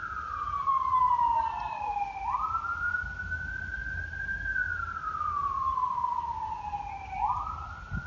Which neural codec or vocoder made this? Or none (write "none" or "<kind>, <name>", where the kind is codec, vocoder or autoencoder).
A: none